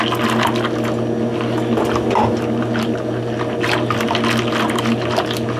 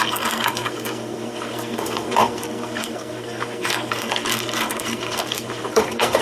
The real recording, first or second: first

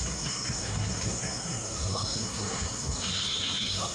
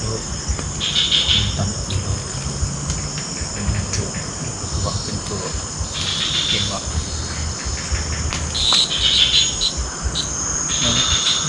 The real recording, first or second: second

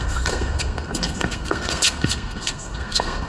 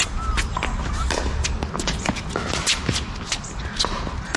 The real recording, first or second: second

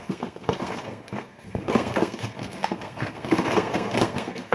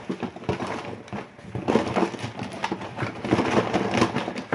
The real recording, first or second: second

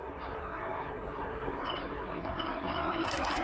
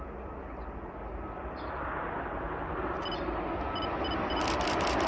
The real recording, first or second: second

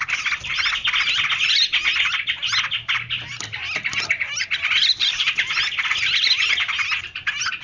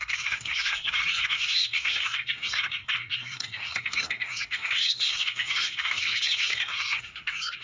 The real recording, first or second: first